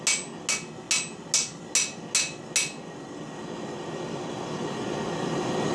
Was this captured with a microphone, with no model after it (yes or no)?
yes